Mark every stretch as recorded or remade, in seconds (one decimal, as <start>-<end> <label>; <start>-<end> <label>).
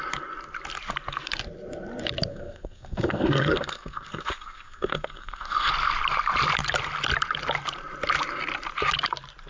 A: 0.0-2.3 recorded; 2.3-5.7 remade; 5.7-9.5 recorded